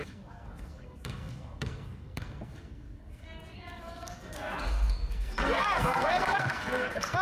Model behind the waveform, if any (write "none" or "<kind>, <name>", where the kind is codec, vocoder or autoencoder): codec, SNAC